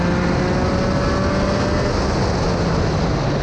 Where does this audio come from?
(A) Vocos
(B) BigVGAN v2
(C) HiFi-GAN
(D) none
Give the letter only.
D